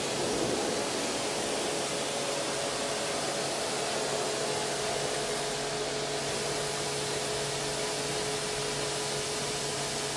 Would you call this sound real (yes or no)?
yes